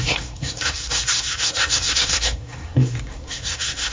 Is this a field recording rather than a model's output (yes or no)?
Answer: no